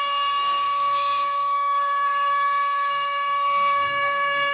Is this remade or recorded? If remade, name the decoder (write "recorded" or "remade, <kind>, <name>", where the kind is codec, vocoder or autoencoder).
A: remade, codec, SNAC